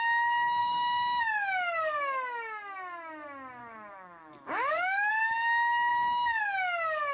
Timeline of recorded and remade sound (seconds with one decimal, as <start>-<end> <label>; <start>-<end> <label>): 0.0-0.6 recorded; 0.6-1.2 remade; 1.2-3.6 recorded; 3.6-5.1 remade; 5.1-7.1 recorded